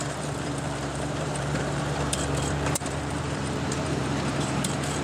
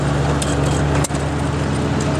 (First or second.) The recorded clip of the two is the second